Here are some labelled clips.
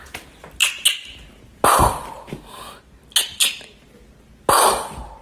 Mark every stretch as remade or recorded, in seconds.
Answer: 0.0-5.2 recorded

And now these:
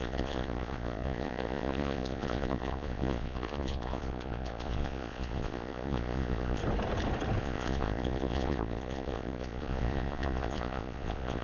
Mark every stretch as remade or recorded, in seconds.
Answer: 0.0-6.6 remade; 6.6-7.4 recorded; 7.4-11.4 remade

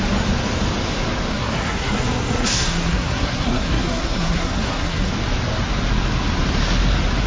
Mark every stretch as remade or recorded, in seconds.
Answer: 0.0-1.3 recorded; 1.3-5.1 remade; 5.1-7.3 recorded